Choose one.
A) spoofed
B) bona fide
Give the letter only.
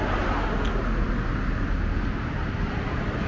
B